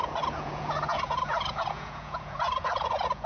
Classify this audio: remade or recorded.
remade